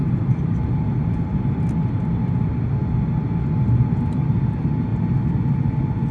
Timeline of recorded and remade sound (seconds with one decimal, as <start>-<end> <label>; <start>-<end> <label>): 0.0-0.8 remade; 0.8-4.9 recorded; 4.9-5.4 remade; 5.4-6.1 recorded